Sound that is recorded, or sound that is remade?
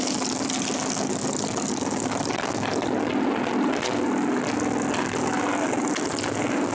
recorded